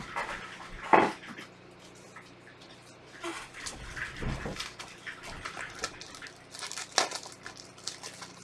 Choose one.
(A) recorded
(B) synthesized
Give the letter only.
A